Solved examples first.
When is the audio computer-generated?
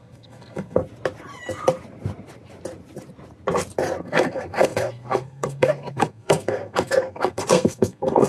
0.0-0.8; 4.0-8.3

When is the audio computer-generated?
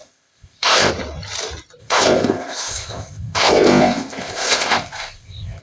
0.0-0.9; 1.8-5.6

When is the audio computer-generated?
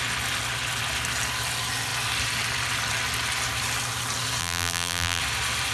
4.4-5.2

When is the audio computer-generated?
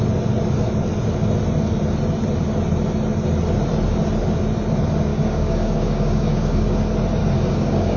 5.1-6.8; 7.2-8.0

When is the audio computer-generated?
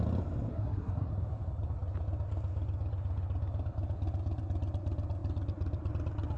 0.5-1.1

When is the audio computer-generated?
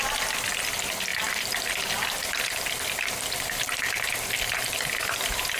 none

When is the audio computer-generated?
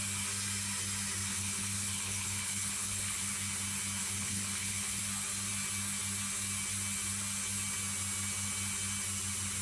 1.3-3.3; 4.0-5.0